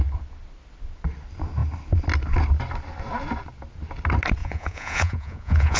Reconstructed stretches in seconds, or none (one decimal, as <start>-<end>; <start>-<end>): 4.4-5.8